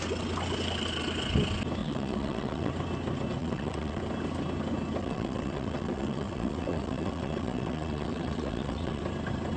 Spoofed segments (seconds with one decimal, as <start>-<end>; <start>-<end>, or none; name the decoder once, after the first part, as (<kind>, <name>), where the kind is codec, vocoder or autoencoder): 1.8-2.7 (vocoder, WaveNeXt); 3.4-4.0; 5.0-9.0